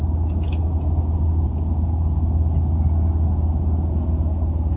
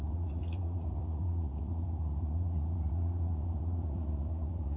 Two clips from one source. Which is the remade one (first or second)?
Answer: second